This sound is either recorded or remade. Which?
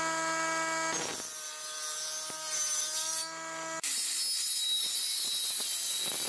recorded